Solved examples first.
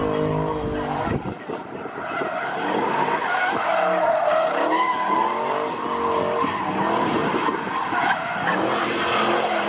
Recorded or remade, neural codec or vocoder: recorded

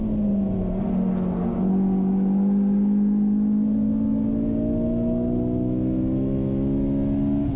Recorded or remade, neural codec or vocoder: recorded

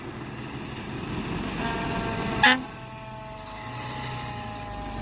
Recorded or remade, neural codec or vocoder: recorded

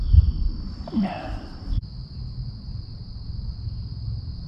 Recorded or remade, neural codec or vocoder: recorded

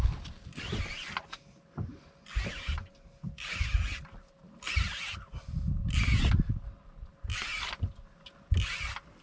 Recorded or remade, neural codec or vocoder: recorded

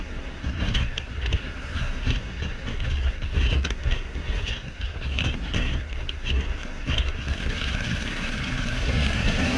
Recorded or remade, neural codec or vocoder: remade, codec, SNAC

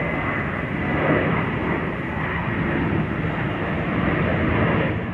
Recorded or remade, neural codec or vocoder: recorded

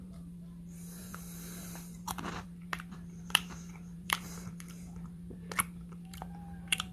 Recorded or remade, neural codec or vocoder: remade, vocoder, BigVGAN v2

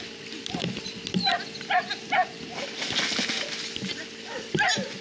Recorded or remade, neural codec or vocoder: recorded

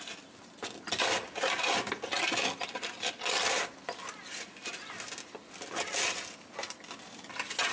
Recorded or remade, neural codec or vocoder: recorded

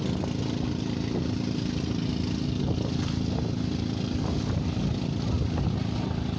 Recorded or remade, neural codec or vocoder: recorded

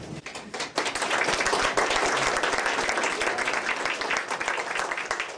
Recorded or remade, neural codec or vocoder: recorded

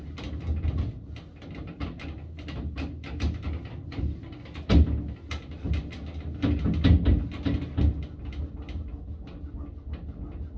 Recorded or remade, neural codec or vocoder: recorded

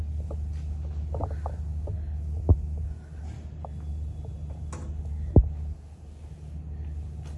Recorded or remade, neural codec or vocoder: recorded